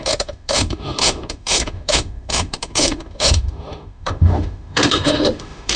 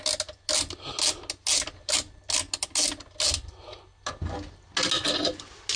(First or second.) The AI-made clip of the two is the first